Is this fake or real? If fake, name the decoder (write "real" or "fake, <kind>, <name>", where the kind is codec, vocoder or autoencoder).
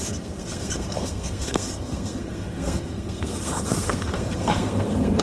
fake, codec, SNAC